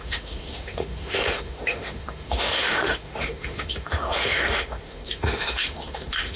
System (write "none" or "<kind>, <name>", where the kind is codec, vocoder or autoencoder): autoencoder, DAC-VAE